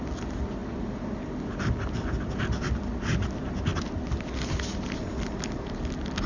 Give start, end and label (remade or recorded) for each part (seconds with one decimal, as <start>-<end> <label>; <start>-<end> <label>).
0.0-6.3 recorded